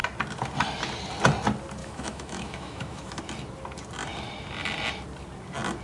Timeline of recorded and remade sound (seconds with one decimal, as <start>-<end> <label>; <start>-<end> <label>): 0.0-1.8 recorded; 1.8-3.2 remade; 3.2-5.8 recorded